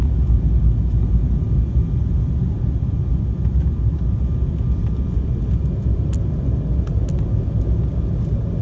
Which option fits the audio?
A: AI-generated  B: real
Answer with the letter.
B